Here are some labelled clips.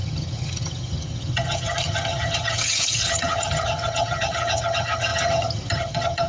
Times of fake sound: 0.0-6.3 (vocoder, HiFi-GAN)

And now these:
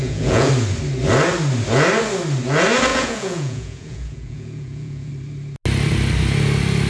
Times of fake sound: 0.0-0.5 (vocoder, Vocos); 2.9-5.1

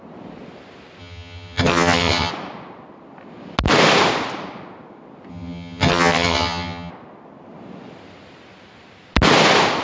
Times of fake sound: 1.0-2.3 (vocoder, HiFi-GAN); 5.3-6.9

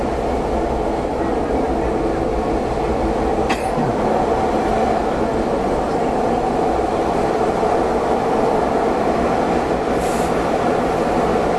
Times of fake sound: none

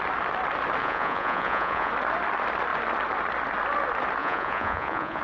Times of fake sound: 0.8-1.9 (vocoder, Vocos); 4.2-5.2